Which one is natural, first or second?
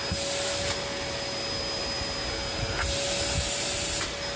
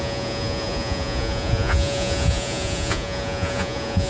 first